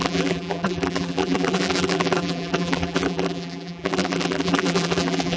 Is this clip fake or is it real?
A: fake